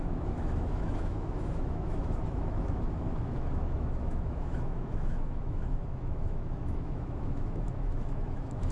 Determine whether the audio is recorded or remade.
remade